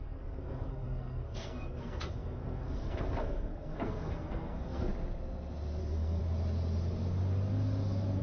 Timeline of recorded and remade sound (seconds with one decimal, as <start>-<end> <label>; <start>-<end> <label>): 0.0-4.9 remade; 4.9-5.8 recorded; 5.8-6.2 remade; 6.2-8.2 recorded